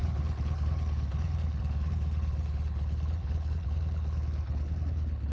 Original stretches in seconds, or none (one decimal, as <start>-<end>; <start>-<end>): none